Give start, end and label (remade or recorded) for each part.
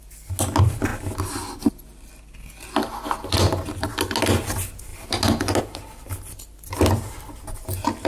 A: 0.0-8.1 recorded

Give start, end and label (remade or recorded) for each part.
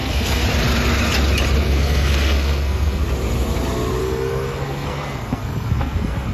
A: 0.0-0.4 remade; 0.4-1.6 recorded; 1.6-3.0 remade; 3.0-4.0 recorded; 4.0-6.3 remade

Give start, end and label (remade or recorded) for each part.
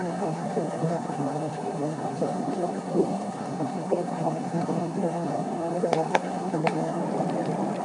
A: 0.0-7.0 remade; 7.0-7.8 recorded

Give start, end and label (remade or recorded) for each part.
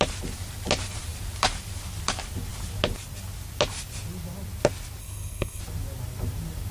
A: 0.0-5.0 recorded; 5.0-5.6 remade; 5.6-6.7 recorded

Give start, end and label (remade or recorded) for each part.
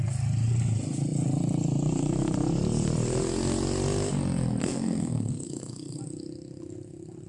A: 0.0-4.6 recorded; 4.6-6.0 remade; 6.0-7.3 recorded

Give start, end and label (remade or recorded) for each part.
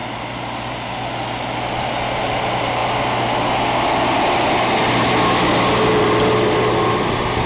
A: 0.0-7.5 recorded